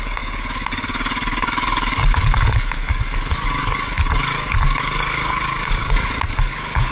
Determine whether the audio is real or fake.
fake